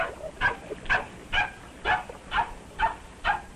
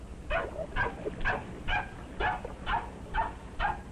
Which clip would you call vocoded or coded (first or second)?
first